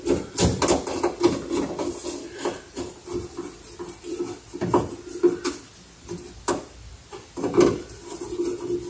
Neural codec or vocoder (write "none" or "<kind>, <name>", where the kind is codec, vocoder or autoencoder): none